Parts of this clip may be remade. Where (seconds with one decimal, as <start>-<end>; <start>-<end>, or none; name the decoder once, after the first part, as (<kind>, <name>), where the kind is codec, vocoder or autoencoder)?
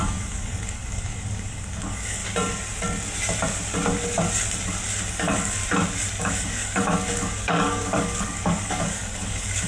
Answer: 0.0-2.2 (codec, DAC); 5.1-5.6; 6.2-9.7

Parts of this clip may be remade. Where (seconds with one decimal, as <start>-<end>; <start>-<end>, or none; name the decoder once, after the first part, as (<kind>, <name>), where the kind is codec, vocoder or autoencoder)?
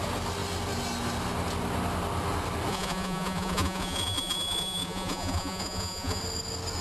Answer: 2.7-6.2 (vocoder, Vocos)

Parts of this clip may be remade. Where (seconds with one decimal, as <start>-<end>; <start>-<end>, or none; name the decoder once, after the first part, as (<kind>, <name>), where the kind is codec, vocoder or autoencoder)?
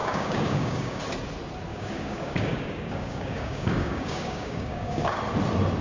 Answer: 0.0-1.0 (codec, DAC); 1.7-5.2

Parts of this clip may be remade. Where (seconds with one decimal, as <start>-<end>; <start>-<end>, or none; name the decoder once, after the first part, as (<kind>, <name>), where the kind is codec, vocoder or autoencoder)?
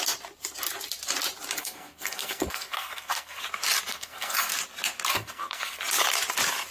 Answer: 1.6-3.4 (codec, SNAC); 3.9-4.5; 5.1-5.8